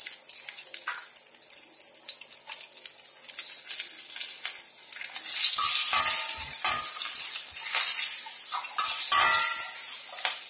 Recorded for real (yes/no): yes